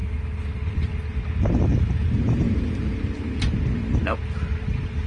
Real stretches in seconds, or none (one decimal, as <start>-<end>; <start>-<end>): 0.0-1.7; 3.0-5.1